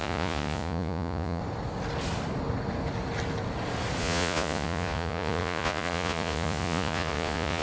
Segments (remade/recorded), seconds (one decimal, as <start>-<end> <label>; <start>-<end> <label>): 0.0-1.4 remade; 1.4-4.0 recorded; 4.0-7.6 remade